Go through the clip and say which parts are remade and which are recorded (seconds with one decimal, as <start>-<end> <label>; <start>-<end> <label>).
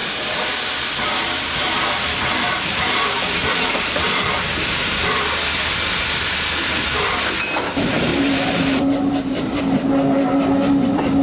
0.0-5.2 remade; 5.2-8.1 recorded; 8.1-9.6 remade; 9.6-11.2 recorded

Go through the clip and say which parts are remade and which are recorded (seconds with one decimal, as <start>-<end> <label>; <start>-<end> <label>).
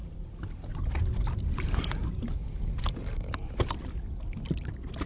0.0-5.1 recorded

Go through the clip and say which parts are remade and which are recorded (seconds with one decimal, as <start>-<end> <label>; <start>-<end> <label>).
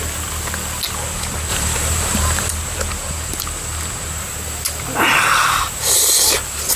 0.0-1.5 recorded; 1.5-2.5 remade; 2.5-6.8 recorded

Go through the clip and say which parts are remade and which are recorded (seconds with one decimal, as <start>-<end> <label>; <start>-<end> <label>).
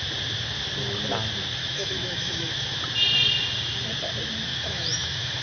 0.0-1.6 recorded; 1.6-2.5 remade; 2.5-4.5 recorded; 4.5-5.4 remade